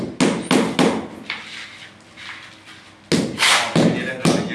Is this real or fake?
real